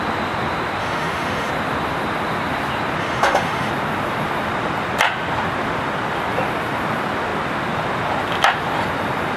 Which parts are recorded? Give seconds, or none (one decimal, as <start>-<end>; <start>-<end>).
0.0-0.8; 1.5-3.0; 3.7-9.4

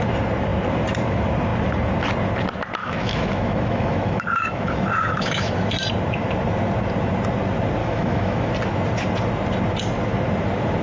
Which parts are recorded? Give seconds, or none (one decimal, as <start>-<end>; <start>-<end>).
0.0-2.8; 5.7-7.8; 8.5-10.8

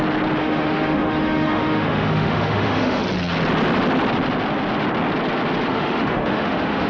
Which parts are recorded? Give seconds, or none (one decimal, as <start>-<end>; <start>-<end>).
0.0-0.4; 3.0-5.7